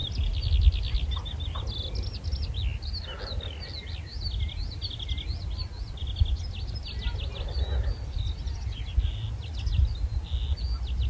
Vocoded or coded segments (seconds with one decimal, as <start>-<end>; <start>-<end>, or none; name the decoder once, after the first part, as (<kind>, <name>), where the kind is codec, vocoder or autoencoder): none